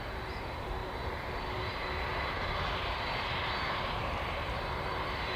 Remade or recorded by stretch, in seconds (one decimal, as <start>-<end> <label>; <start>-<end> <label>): 0.0-0.8 remade; 0.8-4.0 recorded; 4.0-5.4 remade